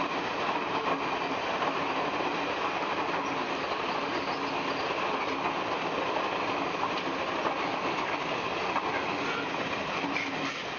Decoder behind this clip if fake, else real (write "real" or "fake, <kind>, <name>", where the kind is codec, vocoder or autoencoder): real